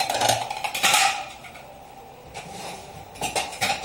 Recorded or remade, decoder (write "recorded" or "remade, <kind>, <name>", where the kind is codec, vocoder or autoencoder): remade, vocoder, BigVGAN v2